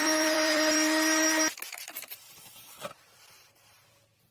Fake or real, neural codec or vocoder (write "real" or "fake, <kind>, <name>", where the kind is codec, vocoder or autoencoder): fake, vocoder, BigVGAN v2